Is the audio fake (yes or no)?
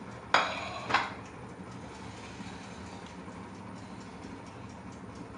no